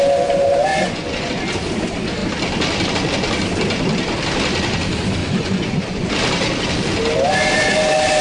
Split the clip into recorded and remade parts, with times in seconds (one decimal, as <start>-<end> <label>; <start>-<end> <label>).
0.0-0.7 recorded; 0.7-1.3 remade; 1.3-5.2 recorded; 5.2-6.1 remade; 6.1-8.2 recorded